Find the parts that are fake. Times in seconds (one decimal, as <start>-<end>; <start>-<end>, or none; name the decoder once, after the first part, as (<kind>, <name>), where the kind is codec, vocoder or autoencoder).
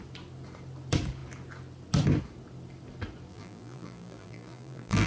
3.3-5.1 (vocoder, BigVGAN v2)